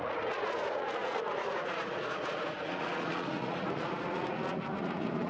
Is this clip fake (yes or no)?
yes